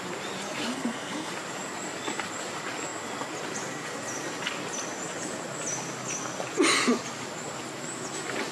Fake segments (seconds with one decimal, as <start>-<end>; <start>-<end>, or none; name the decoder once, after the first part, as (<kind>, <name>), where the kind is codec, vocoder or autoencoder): 0.7-1.3 (codec, SNAC)